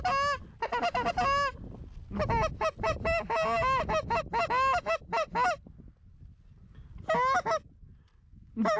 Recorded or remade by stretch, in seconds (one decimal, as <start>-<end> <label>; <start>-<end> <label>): 0.0-8.8 recorded